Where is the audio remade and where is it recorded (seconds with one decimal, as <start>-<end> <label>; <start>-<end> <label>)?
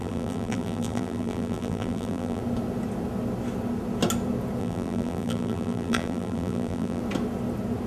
0.0-2.4 remade; 2.4-4.6 recorded; 4.6-7.0 remade; 7.0-7.9 recorded